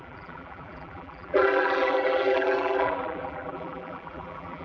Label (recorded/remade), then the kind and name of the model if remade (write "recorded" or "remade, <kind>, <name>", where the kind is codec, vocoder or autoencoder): remade, vocoder, BigVGAN v2